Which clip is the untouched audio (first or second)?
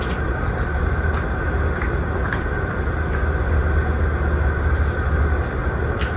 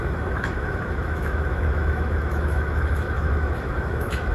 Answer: first